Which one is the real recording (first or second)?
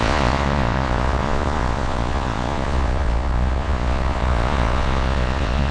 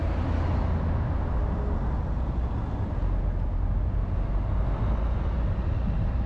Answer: second